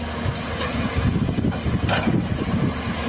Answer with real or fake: real